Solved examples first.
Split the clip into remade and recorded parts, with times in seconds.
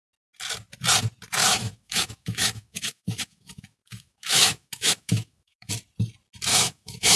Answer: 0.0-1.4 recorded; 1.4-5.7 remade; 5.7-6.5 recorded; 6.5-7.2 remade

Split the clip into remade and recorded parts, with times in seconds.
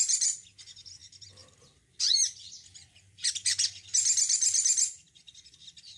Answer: 0.0-6.0 recorded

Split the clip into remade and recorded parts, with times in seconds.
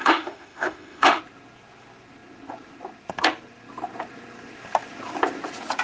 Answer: 0.0-1.2 remade; 1.2-5.8 recorded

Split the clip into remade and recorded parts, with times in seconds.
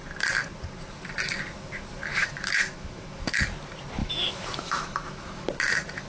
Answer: 0.0-2.1 recorded; 2.1-3.4 remade; 3.4-4.0 recorded; 4.0-5.5 remade; 5.5-6.1 recorded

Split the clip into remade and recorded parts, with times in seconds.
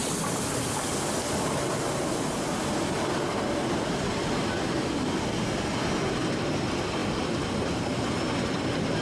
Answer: 0.0-9.0 recorded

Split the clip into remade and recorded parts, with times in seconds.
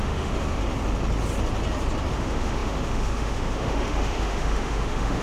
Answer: 0.0-0.6 remade; 0.6-2.1 recorded; 2.1-5.2 remade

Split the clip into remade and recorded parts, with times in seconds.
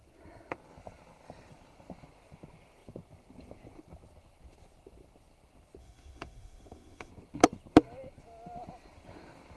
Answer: 0.0-5.8 recorded; 5.8-7.1 remade; 7.1-9.6 recorded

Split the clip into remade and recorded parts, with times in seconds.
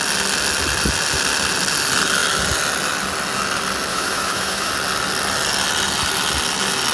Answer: 0.0-3.9 recorded; 3.9-4.7 remade; 4.7-6.9 recorded